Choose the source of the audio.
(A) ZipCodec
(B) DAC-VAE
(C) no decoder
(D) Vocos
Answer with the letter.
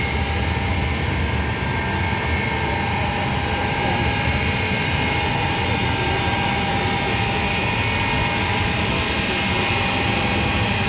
C